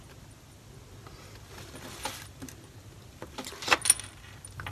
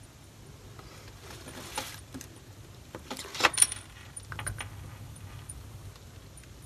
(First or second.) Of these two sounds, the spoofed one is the second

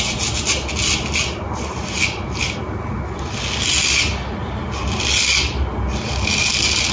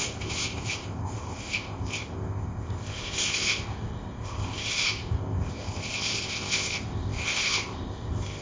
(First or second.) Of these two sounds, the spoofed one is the second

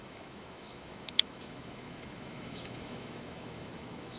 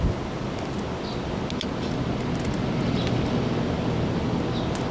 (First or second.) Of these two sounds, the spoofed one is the first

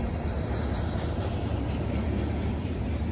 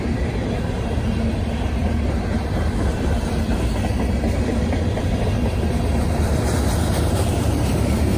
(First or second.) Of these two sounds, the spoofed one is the second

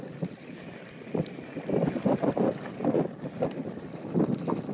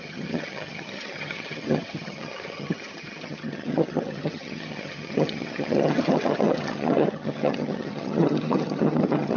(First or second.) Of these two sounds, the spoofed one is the second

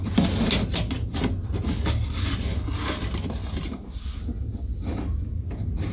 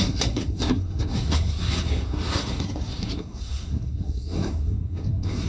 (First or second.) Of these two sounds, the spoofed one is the second